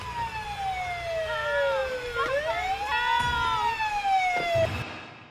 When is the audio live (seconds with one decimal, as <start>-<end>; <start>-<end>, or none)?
0.0-5.3